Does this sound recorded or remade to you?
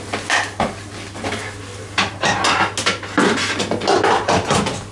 recorded